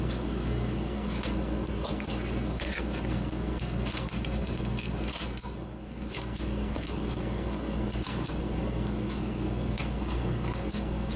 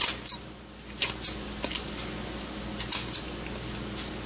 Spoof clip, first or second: first